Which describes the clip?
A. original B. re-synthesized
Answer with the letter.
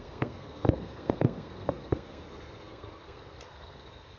B